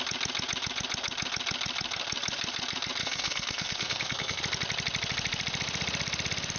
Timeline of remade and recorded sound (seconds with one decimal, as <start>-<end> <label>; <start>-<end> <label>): 0.0-3.0 recorded; 3.0-4.4 remade; 4.4-6.6 recorded